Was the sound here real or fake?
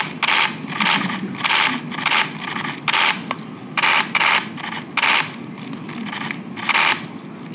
real